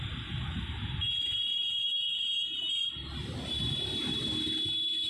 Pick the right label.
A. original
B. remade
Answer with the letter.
A